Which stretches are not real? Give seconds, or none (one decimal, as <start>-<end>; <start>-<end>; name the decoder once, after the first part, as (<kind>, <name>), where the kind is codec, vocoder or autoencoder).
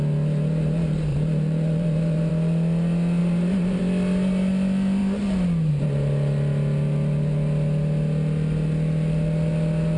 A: 1.1-2.3 (vocoder, BigVGAN v2); 3.2-3.8